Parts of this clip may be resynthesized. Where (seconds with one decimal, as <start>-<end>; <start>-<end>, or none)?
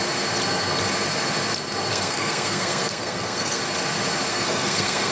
1.9-3.6; 4.3-5.1